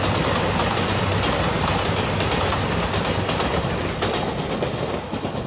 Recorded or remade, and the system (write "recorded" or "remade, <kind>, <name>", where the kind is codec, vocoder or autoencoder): recorded